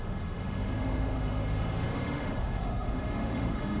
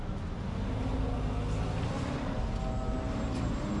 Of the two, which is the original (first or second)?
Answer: second